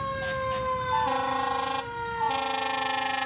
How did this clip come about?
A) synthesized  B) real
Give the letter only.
B